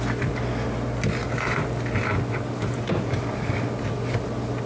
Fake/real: real